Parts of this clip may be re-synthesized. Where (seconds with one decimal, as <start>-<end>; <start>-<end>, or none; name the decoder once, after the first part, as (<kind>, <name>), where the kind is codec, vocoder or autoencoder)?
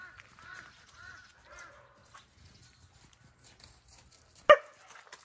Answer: none